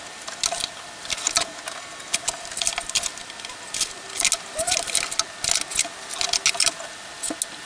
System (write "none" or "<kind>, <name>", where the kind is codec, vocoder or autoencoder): none